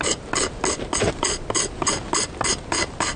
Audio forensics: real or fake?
real